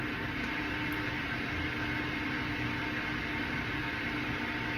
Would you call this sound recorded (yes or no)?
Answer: yes